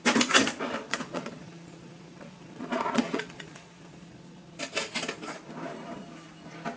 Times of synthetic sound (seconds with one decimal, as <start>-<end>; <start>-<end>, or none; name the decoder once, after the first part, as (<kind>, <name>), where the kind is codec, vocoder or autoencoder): 0.8-4.6 (vocoder, Vocos)